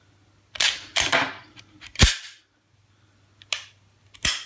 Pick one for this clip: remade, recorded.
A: recorded